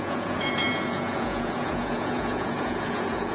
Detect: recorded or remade remade